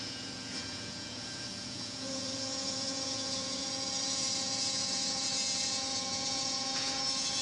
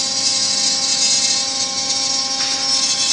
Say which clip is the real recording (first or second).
second